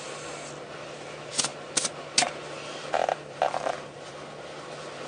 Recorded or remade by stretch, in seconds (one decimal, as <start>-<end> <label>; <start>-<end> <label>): 0.0-3.0 recorded; 3.0-4.2 remade; 4.2-5.1 recorded